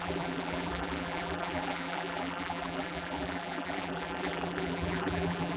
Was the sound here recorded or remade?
remade